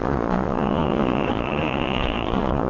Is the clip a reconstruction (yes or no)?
yes